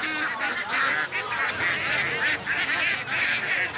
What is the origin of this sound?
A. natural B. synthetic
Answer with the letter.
A